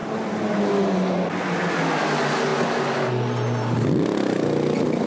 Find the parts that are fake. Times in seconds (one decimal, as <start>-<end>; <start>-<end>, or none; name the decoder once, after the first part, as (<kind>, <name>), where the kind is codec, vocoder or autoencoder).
none